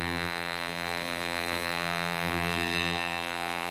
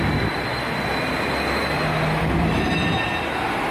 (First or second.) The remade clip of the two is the first